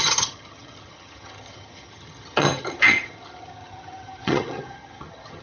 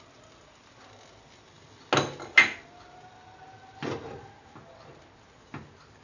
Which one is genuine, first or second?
second